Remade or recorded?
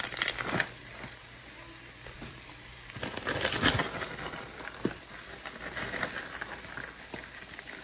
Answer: recorded